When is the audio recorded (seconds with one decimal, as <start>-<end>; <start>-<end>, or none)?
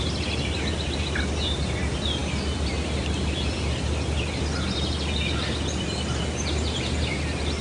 0.0-7.6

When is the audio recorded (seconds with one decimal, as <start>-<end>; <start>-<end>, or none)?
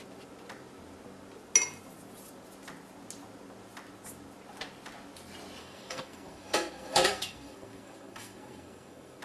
0.0-5.6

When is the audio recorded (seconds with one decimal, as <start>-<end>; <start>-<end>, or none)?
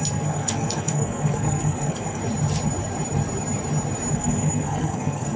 2.2-4.1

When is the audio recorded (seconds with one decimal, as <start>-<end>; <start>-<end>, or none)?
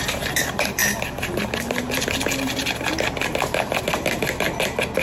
0.0-5.0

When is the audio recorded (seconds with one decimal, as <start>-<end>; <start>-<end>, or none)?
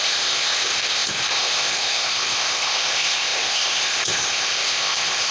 none